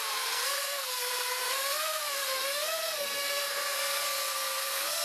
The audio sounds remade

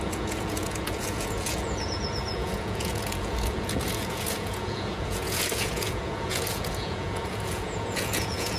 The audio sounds remade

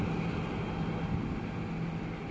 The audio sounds recorded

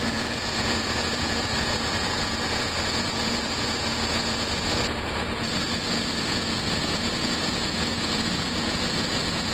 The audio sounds remade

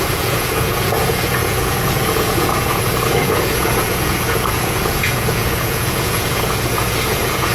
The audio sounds remade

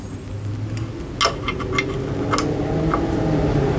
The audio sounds recorded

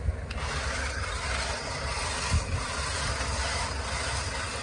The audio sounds recorded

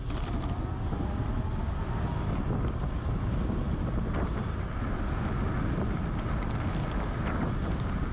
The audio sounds recorded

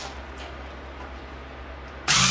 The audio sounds recorded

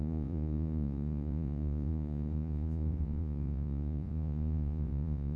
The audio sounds remade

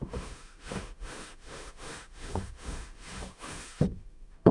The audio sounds remade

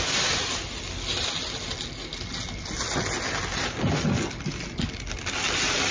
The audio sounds recorded